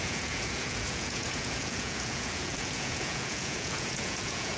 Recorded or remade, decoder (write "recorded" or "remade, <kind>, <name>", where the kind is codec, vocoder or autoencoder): remade, vocoder, Vocos